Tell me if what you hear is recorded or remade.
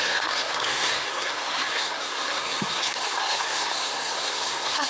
remade